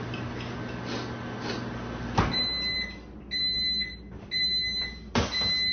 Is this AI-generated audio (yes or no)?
no